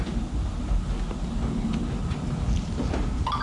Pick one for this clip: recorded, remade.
recorded